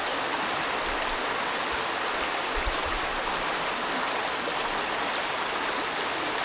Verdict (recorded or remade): recorded